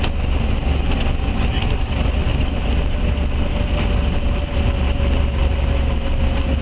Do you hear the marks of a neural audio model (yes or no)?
no